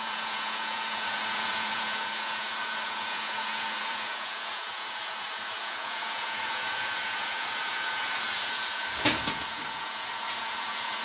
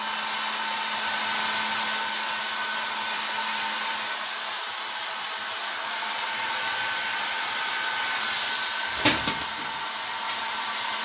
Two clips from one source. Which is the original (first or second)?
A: second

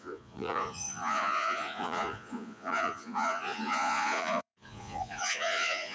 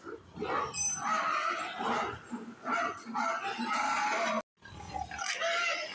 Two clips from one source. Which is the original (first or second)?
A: second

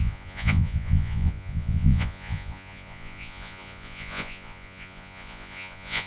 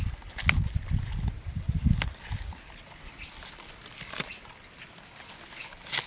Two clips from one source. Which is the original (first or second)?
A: second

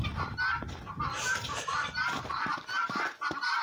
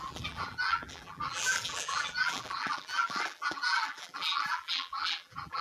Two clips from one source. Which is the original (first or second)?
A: first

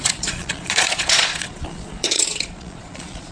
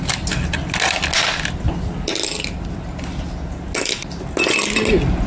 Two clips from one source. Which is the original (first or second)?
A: second